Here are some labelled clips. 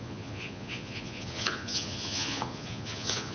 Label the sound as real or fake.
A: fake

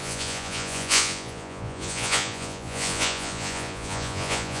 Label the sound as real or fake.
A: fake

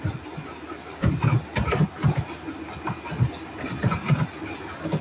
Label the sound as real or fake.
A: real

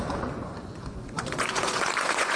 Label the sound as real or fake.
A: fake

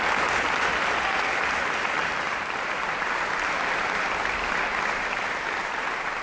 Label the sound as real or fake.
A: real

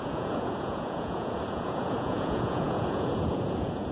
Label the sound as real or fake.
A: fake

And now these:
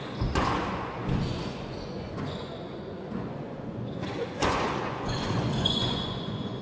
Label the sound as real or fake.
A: fake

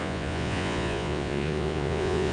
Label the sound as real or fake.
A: fake